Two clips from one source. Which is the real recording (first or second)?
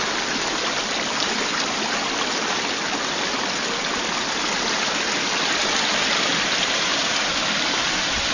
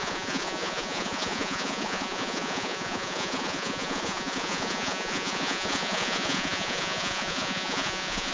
first